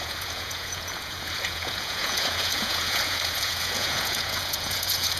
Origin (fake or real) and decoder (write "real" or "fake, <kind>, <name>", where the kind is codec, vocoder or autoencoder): fake, vocoder, Vocos